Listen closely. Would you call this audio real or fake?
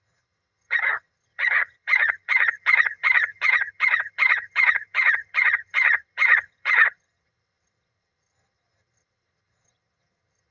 fake